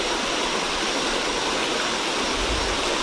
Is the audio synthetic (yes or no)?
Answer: no